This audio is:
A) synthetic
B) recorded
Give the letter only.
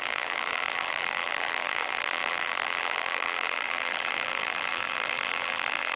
A